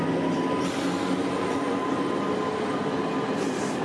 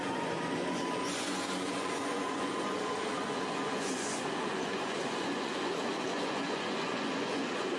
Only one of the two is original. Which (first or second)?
first